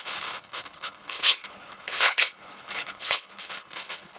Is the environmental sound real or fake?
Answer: fake